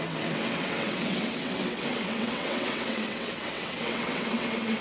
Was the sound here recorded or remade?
remade